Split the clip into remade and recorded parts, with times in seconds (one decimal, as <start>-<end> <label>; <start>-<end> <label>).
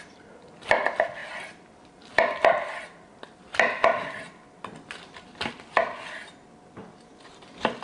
0.0-7.8 recorded